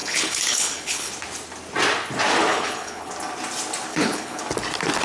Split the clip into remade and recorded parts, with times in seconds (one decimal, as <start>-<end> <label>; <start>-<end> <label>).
0.0-1.1 remade; 1.1-2.5 recorded; 2.5-3.1 remade; 3.1-3.9 recorded; 3.9-4.4 remade; 4.4-5.0 recorded